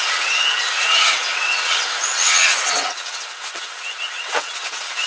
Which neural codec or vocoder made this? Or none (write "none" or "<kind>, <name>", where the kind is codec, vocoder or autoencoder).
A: vocoder, WaveNeXt